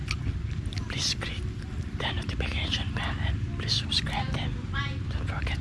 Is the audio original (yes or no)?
yes